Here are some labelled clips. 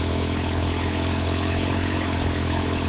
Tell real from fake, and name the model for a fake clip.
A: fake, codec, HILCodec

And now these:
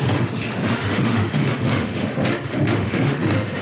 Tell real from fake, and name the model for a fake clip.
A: fake, autoencoder, DAC-VAE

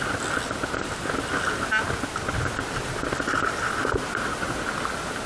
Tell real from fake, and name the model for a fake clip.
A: real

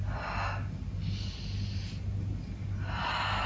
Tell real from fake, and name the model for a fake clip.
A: real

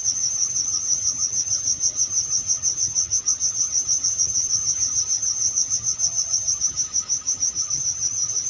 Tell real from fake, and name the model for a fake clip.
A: fake, vocoder, HiFi-GAN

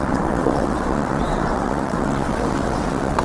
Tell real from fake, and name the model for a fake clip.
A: fake, vocoder, WaveNeXt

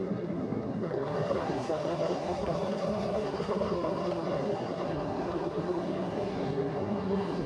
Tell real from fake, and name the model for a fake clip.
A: fake, codec, SNAC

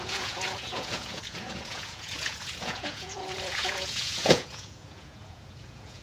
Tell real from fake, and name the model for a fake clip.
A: fake, vocoder, Vocos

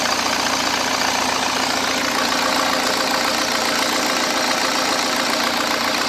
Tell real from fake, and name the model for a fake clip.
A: real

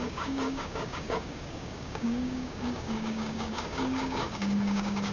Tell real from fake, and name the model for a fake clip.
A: fake, codec, DAC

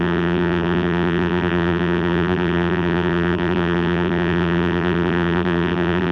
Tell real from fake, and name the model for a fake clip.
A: fake, vocoder, BigVGAN v2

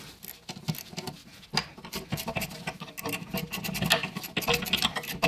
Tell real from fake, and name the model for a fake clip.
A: real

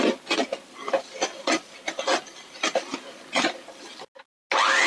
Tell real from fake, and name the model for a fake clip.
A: real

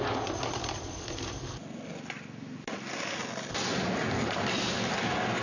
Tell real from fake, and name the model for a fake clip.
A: real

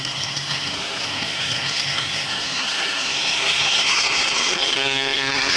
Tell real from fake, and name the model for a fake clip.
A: fake, codec, SNAC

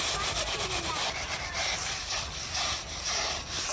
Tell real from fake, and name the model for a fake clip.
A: real